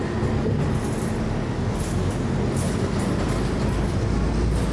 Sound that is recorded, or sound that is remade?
recorded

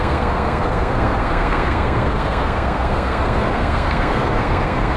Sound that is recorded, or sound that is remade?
remade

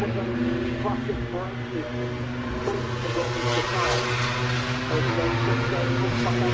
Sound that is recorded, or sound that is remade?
recorded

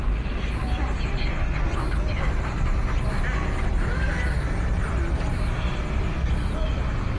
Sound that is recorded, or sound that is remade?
recorded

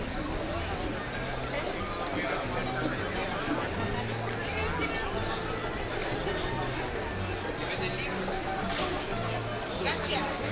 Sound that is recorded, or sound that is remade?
recorded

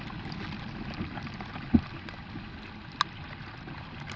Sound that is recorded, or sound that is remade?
recorded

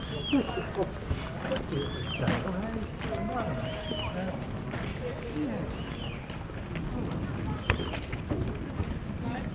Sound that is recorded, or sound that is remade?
recorded